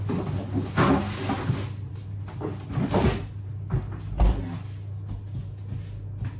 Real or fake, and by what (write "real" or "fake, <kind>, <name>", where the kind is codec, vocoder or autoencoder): real